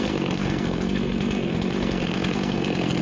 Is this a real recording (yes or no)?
no